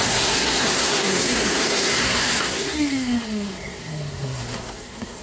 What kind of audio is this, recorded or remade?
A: remade